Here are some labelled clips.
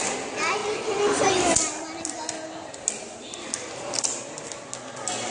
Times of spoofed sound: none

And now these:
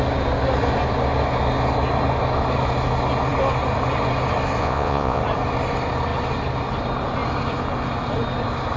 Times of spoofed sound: 4.6-5.2 (vocoder, Vocos)

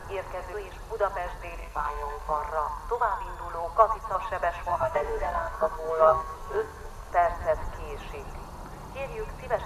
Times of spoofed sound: 1.6-2.4 (codec, SNAC); 4.7-7.1